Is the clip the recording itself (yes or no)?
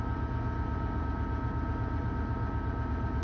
yes